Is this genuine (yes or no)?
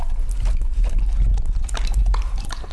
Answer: yes